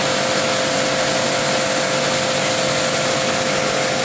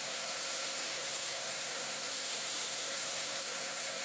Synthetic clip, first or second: second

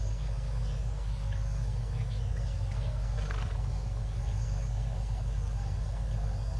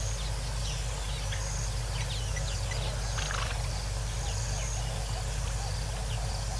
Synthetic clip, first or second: first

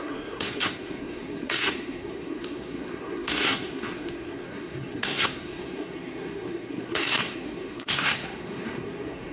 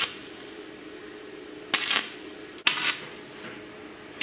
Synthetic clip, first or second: first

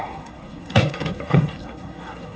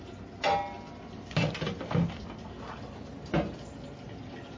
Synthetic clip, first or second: first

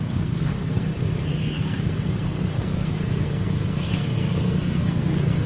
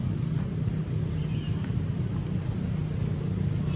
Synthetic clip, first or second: first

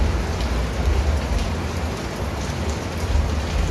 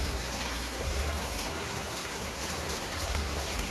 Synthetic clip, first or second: second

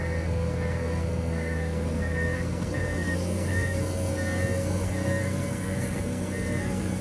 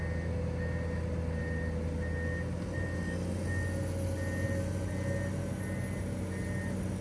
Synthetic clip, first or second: first